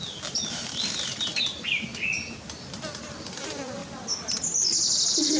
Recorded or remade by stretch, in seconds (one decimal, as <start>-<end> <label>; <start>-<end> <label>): 0.0-1.9 remade; 1.9-2.8 recorded; 2.8-3.8 remade; 3.8-4.4 recorded; 4.4-5.4 remade